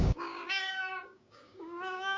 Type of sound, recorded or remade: remade